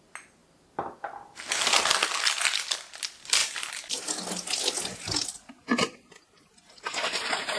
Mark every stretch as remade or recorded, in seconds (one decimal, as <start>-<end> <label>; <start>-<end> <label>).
0.0-7.6 recorded